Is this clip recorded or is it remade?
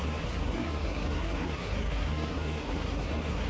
remade